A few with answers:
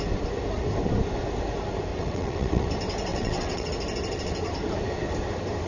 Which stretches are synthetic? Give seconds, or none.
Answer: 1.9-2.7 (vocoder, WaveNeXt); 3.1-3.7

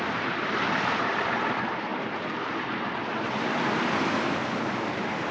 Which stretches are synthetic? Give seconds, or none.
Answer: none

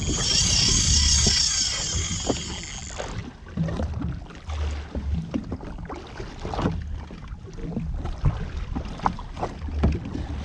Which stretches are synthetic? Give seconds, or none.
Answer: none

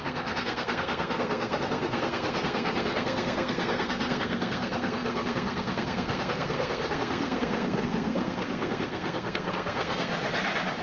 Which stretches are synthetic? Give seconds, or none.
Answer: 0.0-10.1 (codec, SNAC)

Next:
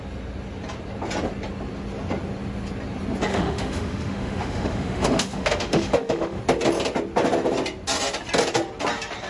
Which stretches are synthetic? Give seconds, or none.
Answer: 3.3-6.4 (autoencoder, DAC-VAE)

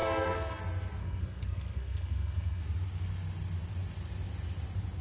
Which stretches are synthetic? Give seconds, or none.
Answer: 0.0-0.6 (codec, SNAC); 1.0-2.6